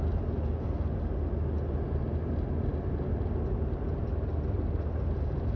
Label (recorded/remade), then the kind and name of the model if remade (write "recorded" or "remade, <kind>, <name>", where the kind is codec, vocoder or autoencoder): recorded